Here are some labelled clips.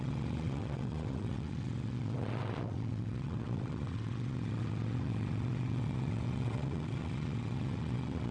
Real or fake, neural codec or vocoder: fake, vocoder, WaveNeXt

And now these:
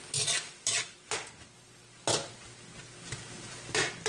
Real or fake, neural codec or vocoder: real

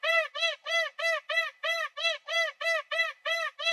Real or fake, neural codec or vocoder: real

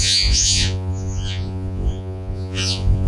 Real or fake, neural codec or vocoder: fake, vocoder, Vocos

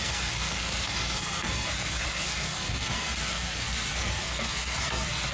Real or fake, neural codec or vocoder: fake, codec, SNAC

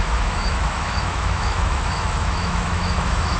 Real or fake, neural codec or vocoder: fake, autoencoder, DAC-VAE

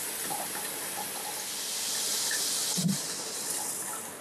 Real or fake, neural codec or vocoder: real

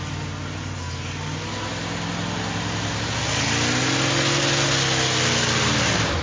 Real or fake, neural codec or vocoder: real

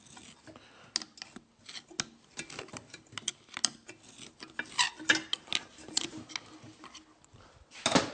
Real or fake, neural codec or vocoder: real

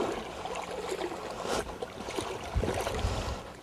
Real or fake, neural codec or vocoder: real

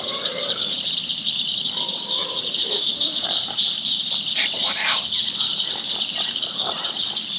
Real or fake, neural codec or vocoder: fake, vocoder, BigVGAN v2